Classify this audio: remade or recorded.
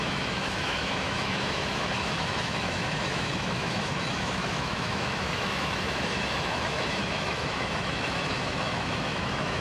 remade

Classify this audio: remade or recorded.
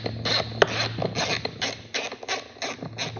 recorded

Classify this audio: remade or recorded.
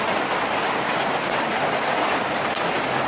recorded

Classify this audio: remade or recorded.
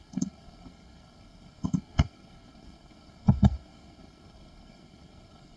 remade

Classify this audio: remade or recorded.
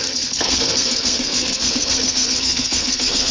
remade